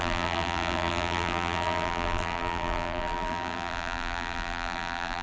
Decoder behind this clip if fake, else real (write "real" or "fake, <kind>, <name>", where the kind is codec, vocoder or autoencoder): fake, vocoder, BigVGAN v2